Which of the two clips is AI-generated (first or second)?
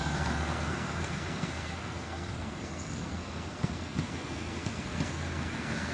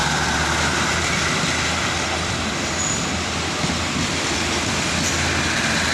first